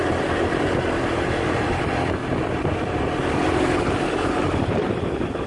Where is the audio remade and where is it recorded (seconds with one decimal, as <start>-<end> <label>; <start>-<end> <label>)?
0.0-1.8 remade; 1.8-2.2 recorded; 2.2-5.0 remade; 5.0-5.5 recorded